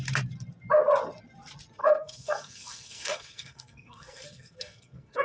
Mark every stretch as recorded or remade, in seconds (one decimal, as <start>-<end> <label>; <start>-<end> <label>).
0.0-1.8 recorded; 1.8-5.2 remade